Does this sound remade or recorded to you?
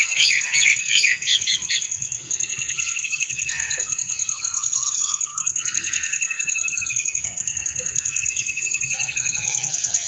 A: remade